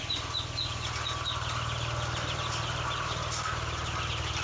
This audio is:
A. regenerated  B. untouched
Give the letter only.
B